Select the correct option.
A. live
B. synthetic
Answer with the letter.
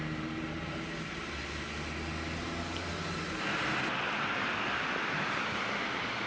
A